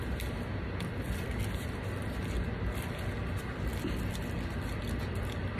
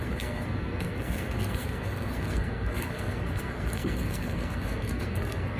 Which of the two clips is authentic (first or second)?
first